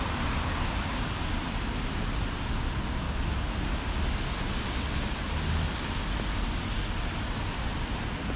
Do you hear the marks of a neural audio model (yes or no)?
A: no